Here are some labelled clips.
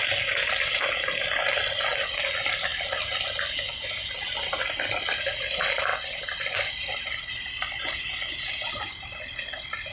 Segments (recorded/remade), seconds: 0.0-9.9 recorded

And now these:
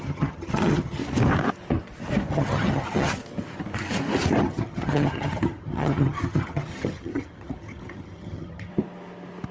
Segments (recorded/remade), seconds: 0.0-1.0 remade; 1.0-2.3 recorded; 2.3-3.2 remade; 3.2-4.4 recorded; 4.4-8.7 remade; 8.7-9.5 recorded

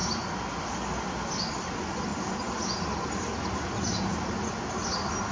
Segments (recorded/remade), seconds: 0.0-5.3 recorded

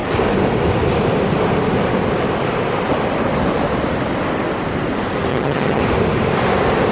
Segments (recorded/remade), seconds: 0.0-5.3 recorded; 5.3-5.8 remade; 5.8-6.9 recorded

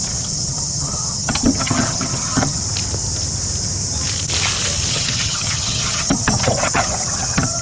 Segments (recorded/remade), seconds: 0.0-2.6 remade; 2.6-4.9 recorded; 4.9-7.6 remade

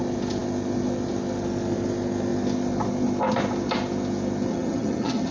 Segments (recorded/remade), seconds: 0.0-4.5 recorded; 4.5-5.3 remade

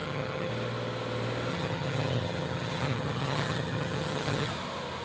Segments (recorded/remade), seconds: 0.0-0.5 remade; 0.5-1.5 recorded; 1.5-4.5 remade; 4.5-5.0 recorded